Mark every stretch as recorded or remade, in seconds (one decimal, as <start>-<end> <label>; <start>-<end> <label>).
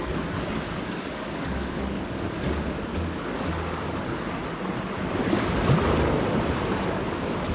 0.0-4.4 remade; 4.4-7.1 recorded; 7.1-7.5 remade